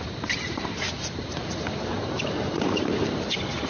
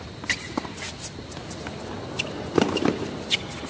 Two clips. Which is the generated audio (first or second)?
first